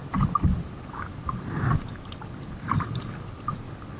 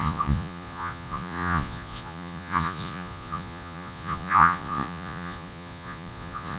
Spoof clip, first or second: second